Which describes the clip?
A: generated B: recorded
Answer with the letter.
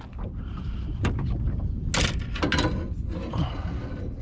B